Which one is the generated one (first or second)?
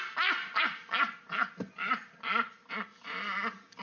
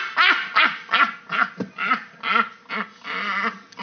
first